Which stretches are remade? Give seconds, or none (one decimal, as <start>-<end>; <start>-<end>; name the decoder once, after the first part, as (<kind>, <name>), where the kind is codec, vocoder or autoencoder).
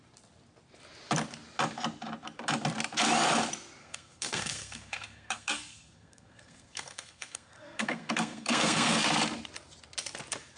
3.8-9.0 (codec, SNAC)